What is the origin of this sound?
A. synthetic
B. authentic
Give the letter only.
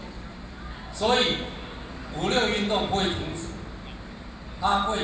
B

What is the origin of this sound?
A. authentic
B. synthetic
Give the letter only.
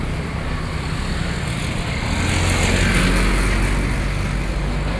A